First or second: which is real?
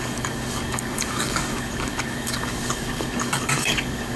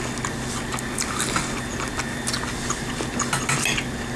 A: second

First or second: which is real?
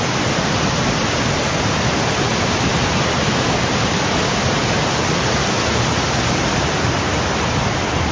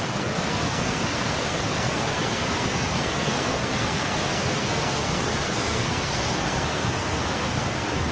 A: first